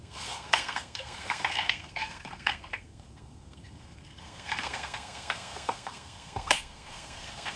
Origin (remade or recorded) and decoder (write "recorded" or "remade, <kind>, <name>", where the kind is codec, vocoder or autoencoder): remade, codec, SNAC